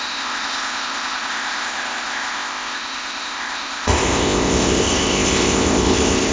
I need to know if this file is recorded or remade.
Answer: remade